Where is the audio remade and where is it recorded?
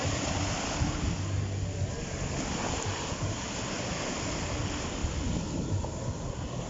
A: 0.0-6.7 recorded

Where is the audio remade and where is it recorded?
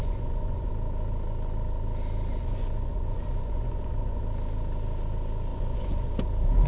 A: 0.0-0.7 remade; 0.7-2.4 recorded; 2.4-4.2 remade; 4.2-5.5 recorded; 5.5-6.1 remade; 6.1-6.7 recorded